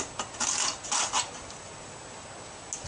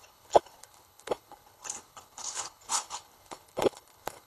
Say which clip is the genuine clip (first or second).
first